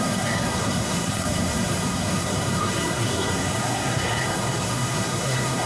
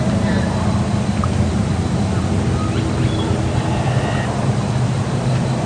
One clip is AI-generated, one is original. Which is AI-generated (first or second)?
first